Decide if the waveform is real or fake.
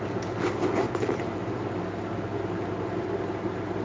real